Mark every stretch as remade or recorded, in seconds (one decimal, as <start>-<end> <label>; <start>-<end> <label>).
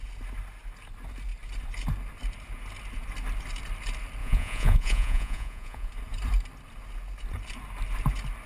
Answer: 0.0-4.2 recorded; 4.2-5.9 remade; 5.9-8.5 recorded